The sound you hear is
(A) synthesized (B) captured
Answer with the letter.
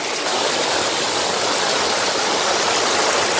B